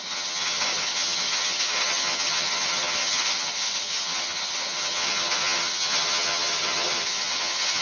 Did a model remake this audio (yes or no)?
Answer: yes